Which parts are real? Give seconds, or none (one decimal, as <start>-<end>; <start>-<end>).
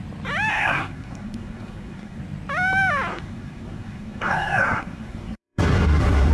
0.0-0.5; 2.2-3.1